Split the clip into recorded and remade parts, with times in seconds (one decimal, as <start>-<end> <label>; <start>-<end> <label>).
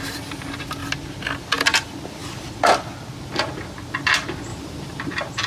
0.0-4.5 recorded; 4.5-5.0 remade; 5.0-5.5 recorded